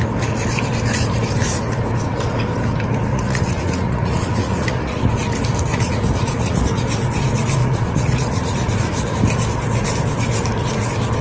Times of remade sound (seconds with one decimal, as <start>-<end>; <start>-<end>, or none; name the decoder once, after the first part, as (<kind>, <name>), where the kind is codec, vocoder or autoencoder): 3.1-5.1 (vocoder, Vocos); 5.7-6.8; 7.6-9.1